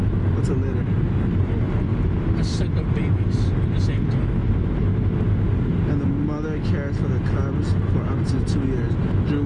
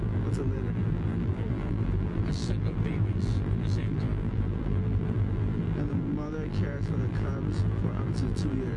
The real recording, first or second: first